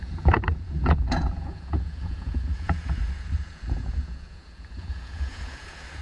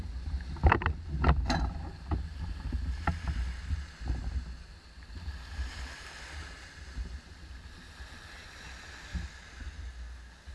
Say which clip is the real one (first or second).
second